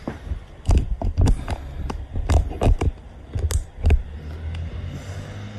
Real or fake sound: real